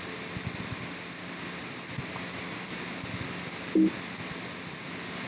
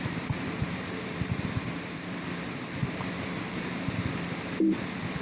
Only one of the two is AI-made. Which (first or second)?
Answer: second